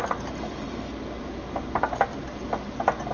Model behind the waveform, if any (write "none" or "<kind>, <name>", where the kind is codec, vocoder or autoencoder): none